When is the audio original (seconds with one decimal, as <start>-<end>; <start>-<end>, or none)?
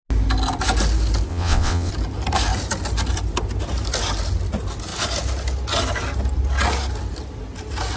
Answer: 0.0-1.3; 1.9-8.0